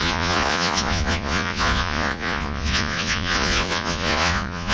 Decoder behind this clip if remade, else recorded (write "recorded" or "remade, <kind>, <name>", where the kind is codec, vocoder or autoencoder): remade, vocoder, Vocos